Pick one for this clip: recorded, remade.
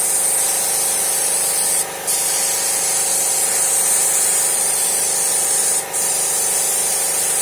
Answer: recorded